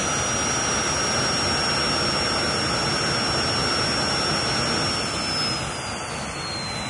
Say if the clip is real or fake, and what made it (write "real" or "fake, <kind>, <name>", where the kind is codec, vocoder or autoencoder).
real